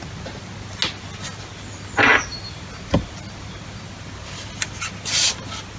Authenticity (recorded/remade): recorded